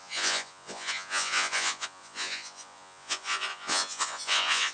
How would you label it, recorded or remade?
remade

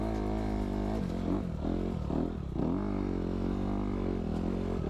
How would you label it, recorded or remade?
recorded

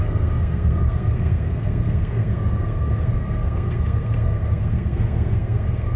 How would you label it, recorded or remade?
remade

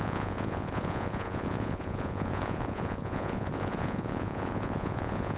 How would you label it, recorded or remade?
remade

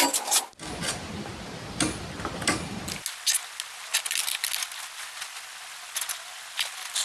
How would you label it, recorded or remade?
recorded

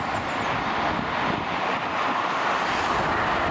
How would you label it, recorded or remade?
recorded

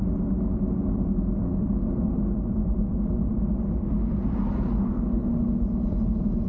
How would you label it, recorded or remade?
recorded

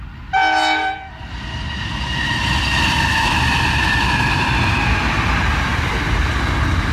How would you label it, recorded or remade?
recorded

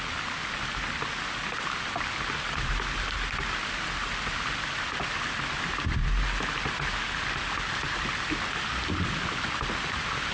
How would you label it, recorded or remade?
recorded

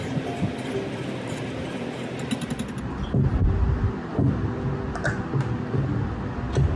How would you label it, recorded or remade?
recorded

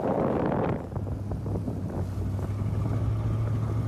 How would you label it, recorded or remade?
recorded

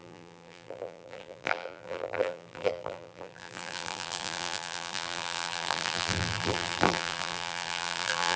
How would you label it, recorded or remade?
remade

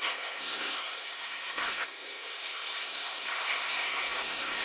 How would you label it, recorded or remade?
remade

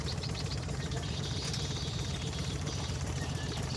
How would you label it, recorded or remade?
remade